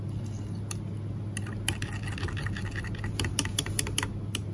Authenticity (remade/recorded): recorded